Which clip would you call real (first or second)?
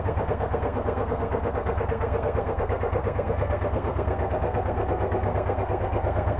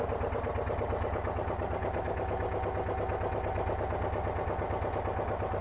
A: second